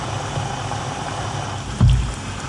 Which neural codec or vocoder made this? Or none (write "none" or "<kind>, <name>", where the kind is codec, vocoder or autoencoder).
none